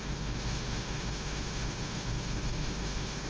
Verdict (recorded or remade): remade